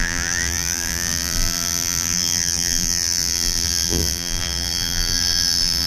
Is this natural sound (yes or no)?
no